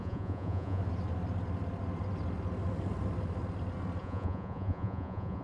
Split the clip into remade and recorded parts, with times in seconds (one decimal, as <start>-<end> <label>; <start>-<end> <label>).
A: 0.0-0.8 remade; 0.8-4.0 recorded; 4.0-5.4 remade